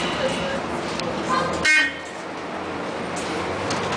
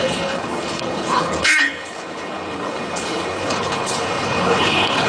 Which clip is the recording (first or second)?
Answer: first